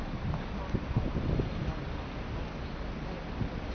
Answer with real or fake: real